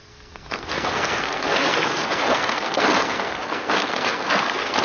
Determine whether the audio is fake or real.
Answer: fake